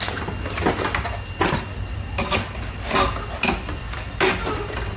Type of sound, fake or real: real